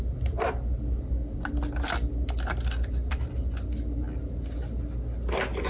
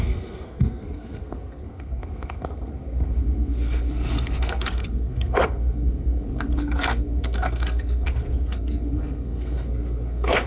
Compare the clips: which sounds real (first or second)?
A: first